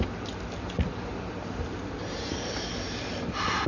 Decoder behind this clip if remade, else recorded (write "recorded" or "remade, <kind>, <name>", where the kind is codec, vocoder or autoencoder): remade, vocoder, BigVGAN v2